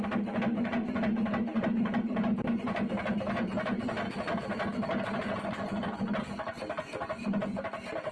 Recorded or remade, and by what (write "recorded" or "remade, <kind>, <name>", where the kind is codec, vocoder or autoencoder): recorded